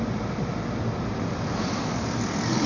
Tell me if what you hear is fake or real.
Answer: real